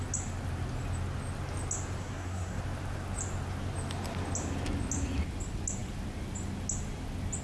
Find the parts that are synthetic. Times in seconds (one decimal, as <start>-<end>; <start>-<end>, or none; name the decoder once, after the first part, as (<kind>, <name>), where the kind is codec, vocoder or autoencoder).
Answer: 2.0-2.6 (codec, SNAC)